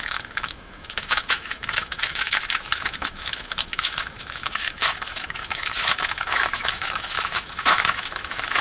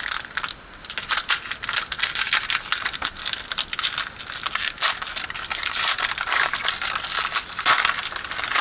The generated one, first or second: first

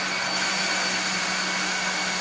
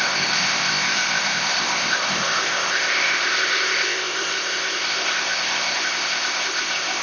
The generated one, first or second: second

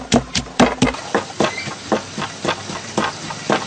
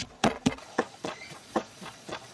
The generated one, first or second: second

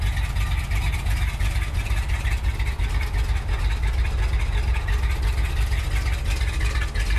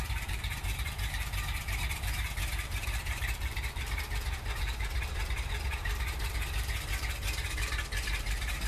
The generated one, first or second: second